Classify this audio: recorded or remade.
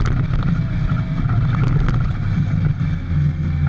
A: recorded